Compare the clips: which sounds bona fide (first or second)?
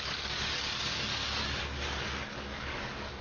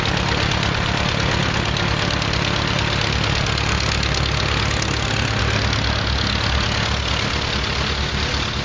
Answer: second